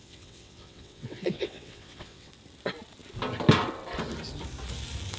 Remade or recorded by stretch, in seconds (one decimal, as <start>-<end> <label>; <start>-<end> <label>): 0.0-2.3 remade; 2.3-5.2 recorded